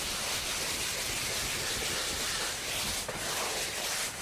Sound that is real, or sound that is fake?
real